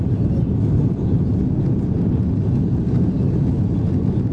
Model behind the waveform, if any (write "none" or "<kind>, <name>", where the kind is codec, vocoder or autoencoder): none